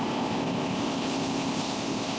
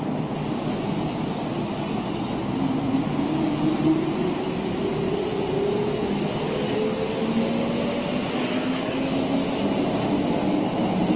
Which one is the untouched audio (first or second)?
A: second